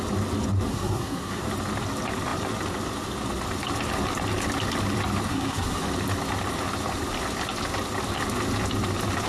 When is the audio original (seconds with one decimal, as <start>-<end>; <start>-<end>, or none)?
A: 0.0-0.7; 1.4-5.3; 5.8-9.3